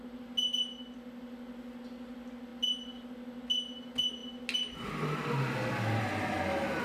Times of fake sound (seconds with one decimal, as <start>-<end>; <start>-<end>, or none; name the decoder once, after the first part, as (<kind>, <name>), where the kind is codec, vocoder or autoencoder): none